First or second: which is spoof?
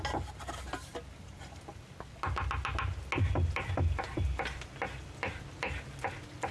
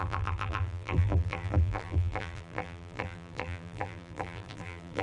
second